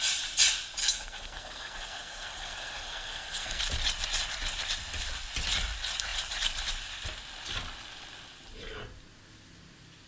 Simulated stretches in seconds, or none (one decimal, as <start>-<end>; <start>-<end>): 0.8-3.6